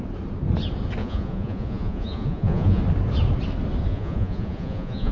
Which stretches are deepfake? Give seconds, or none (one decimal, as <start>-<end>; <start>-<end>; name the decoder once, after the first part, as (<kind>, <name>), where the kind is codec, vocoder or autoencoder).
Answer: 1.0-2.8 (vocoder, Vocos); 3.9-5.1

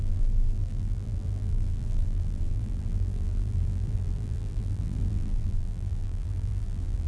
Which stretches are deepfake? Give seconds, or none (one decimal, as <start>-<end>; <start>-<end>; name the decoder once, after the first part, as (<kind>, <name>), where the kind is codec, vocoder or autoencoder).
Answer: 0.0-7.1 (vocoder, BigVGAN v2)

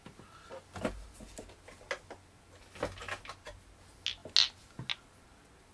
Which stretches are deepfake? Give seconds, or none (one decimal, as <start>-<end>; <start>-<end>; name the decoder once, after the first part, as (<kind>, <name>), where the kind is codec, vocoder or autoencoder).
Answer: none